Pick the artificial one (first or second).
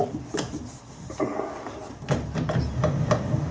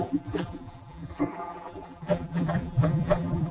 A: second